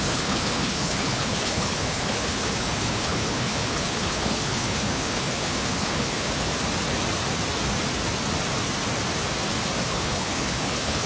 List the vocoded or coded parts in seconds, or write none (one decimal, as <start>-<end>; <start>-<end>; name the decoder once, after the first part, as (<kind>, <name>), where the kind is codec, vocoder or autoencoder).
0.0-6.5 (codec, HILCodec); 9.8-11.1